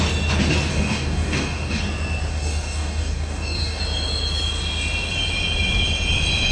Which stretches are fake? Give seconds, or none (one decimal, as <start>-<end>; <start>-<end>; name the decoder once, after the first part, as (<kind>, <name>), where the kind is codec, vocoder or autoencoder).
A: 0.7-1.8 (codec, DAC); 2.3-3.8